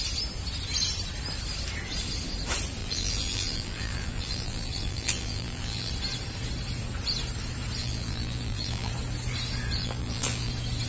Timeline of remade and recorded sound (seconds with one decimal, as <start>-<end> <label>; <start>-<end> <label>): 0.0-2.8 recorded; 2.8-5.9 remade; 5.9-7.8 recorded; 7.8-8.9 remade; 8.9-9.8 recorded; 9.8-10.5 remade; 10.5-10.9 recorded